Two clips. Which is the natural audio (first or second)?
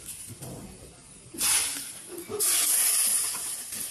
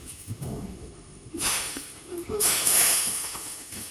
first